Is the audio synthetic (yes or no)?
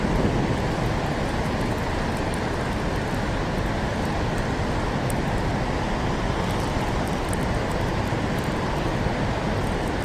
no